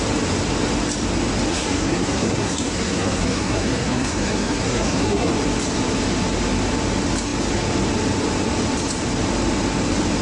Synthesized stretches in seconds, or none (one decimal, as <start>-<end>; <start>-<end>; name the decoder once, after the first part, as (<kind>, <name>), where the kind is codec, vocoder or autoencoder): 1.5-5.3 (codec, SNAC)